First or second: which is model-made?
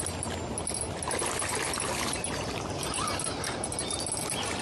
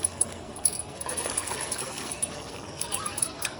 second